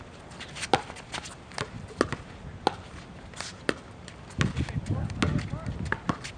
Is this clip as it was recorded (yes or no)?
yes